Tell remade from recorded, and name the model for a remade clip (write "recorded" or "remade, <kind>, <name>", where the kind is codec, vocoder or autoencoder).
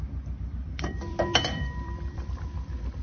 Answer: remade, vocoder, BigVGAN v2